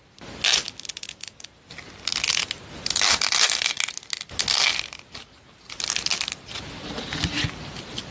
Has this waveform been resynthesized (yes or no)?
no